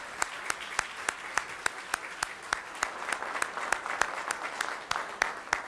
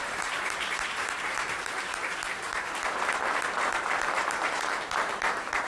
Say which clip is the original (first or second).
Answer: first